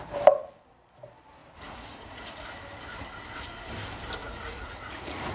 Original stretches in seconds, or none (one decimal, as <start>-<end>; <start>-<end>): 0.0-1.4; 2.5-4.2